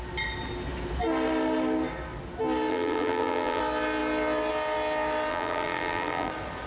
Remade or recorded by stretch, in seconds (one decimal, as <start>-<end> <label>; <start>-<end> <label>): 0.0-2.7 recorded; 2.7-3.6 remade; 3.6-5.3 recorded; 5.3-6.3 remade; 6.3-6.7 recorded